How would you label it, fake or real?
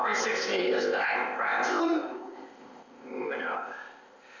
fake